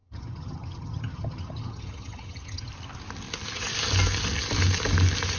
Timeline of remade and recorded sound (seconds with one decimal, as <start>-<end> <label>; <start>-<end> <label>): 0.0-2.7 remade; 2.7-5.4 recorded

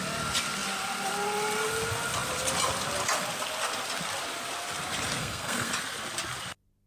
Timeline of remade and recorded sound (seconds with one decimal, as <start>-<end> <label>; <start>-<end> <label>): 0.0-5.2 recorded; 5.2-5.7 remade; 5.7-6.9 recorded

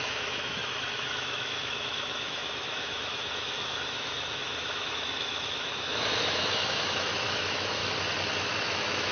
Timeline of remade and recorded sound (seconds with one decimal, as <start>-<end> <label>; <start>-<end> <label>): 0.0-7.8 remade; 7.8-8.6 recorded; 8.6-9.1 remade

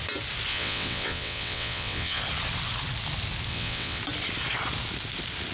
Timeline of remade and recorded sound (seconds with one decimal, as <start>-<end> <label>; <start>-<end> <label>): 0.0-0.5 recorded; 0.5-2.2 remade; 2.2-3.5 recorded; 3.5-4.0 remade; 4.0-5.5 recorded

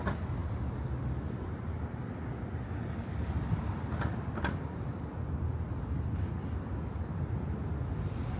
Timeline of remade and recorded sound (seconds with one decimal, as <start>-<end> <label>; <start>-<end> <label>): 0.0-8.4 recorded

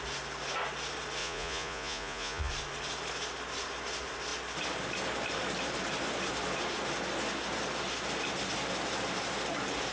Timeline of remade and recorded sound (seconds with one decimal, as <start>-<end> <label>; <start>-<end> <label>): 0.0-1.2 recorded; 1.2-2.5 remade; 2.5-9.9 recorded

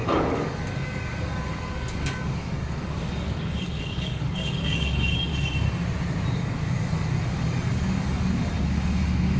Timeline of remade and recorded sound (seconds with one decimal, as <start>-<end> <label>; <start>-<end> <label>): 0.0-5.3 remade; 5.3-6.3 recorded; 6.3-9.4 remade

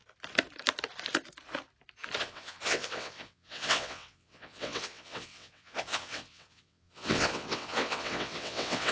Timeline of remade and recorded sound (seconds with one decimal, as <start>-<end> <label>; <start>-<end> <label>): 0.0-2.2 recorded; 2.2-8.9 remade